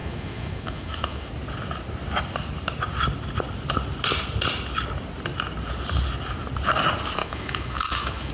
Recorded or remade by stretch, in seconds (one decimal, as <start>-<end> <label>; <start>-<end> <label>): 0.0-1.3 remade; 1.3-7.2 recorded; 7.2-8.3 remade